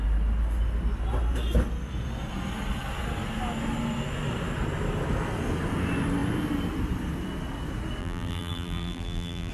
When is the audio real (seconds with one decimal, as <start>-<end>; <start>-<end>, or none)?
0.0-8.0